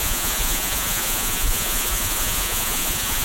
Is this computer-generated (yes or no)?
yes